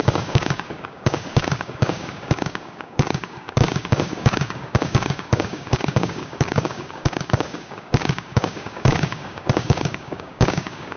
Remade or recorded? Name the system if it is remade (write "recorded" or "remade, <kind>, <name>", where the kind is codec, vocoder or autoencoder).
remade, codec, DAC